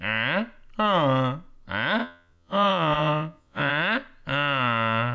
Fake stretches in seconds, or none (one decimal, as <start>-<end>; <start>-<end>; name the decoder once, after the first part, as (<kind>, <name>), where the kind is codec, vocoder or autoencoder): 2.0-3.7 (vocoder, Vocos)